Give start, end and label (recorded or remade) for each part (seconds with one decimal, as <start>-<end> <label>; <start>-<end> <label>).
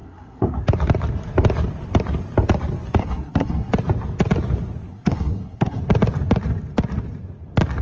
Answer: 0.0-0.6 remade; 0.6-3.0 recorded; 3.0-3.7 remade; 3.7-4.9 recorded; 4.9-5.8 remade; 5.8-7.8 recorded